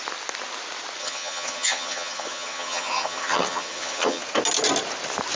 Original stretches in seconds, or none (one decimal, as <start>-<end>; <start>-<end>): 0.0-1.0; 4.2-5.4